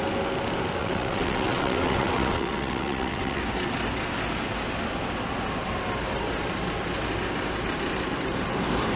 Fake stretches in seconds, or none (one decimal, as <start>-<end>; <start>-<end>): 0.8-3.4